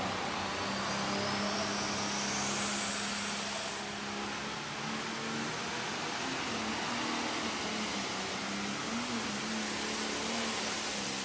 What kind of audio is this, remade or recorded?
recorded